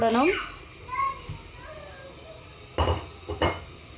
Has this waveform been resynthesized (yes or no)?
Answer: no